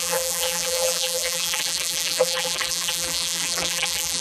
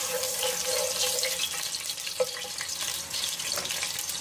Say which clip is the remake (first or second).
first